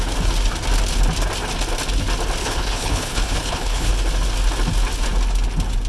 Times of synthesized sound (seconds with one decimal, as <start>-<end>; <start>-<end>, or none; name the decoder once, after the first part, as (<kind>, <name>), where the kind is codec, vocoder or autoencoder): 2.4-3.9 (codec, HILCodec)